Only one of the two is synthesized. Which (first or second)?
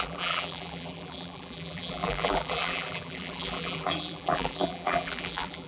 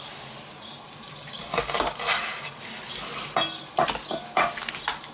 first